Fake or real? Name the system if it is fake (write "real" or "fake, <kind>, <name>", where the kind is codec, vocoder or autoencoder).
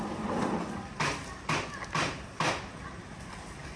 real